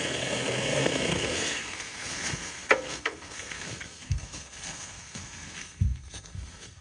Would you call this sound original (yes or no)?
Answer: no